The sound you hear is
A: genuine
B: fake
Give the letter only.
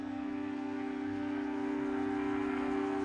B